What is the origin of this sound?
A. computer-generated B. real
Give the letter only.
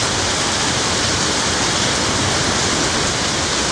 B